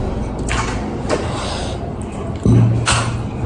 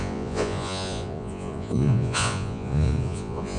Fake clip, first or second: second